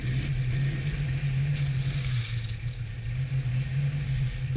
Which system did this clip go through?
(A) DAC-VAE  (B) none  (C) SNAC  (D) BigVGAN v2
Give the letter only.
B